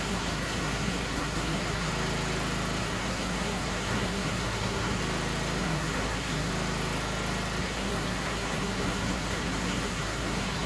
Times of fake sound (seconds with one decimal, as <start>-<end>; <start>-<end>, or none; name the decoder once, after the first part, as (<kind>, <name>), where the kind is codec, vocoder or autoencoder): 0.0-1.9 (codec, SNAC); 2.8-5.0; 5.6-6.5; 7.6-10.7